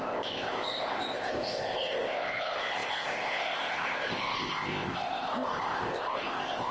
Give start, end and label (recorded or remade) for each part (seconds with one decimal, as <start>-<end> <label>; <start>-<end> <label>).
0.0-6.7 remade